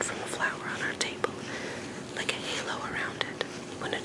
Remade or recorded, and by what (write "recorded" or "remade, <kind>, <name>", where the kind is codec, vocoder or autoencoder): recorded